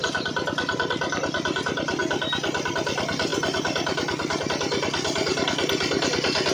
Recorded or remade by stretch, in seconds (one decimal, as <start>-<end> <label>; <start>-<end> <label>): 0.0-6.5 recorded